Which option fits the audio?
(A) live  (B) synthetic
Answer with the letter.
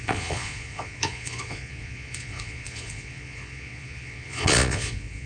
B